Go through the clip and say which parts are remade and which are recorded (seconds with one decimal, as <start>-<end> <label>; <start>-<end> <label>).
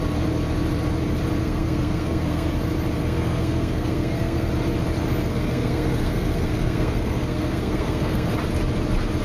0.0-1.4 recorded; 1.4-2.5 remade; 2.5-3.0 recorded; 3.0-4.5 remade; 4.5-5.3 recorded; 5.3-8.3 remade; 8.3-9.2 recorded